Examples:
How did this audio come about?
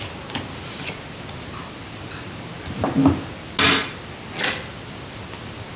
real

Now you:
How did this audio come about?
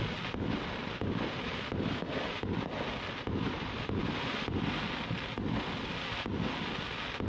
real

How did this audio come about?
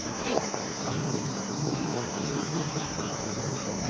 fake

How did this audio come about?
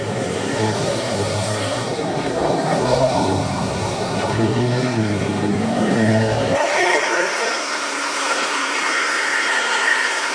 fake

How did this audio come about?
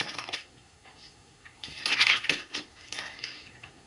fake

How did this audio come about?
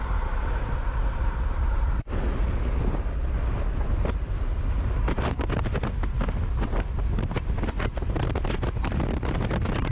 real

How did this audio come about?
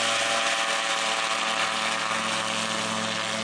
real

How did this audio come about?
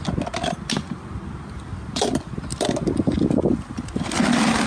real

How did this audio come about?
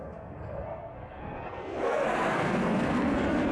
fake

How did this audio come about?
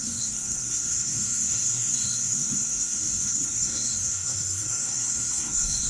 fake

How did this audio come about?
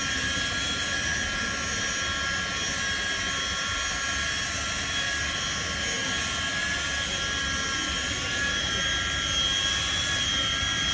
real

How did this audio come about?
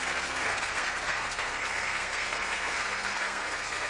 fake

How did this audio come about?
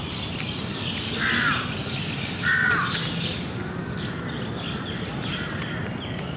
real